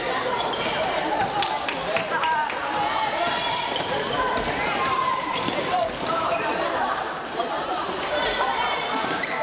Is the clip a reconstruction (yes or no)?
yes